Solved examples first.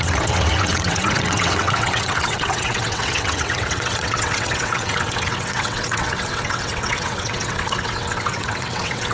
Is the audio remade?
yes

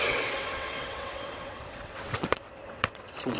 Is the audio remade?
yes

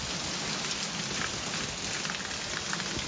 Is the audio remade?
no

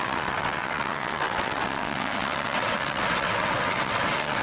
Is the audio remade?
yes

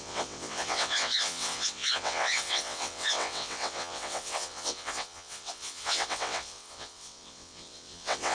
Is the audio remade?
yes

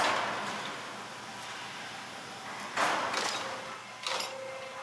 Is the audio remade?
no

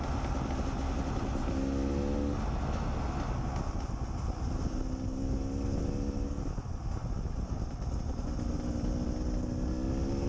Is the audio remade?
no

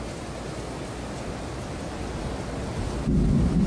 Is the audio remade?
no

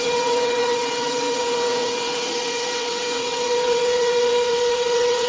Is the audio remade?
yes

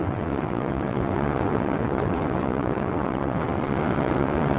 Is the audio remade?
yes